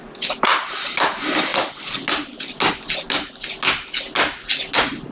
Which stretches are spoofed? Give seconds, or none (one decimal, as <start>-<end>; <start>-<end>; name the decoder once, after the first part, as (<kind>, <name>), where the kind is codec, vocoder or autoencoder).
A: none